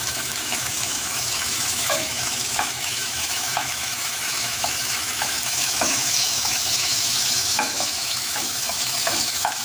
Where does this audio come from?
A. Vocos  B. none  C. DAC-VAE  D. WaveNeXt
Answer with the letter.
C